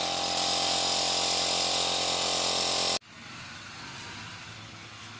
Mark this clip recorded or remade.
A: recorded